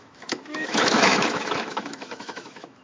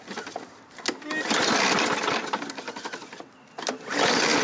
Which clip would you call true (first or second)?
second